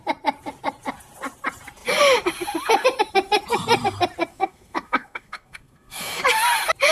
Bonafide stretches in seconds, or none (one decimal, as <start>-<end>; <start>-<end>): 0.0-4.3; 6.2-6.9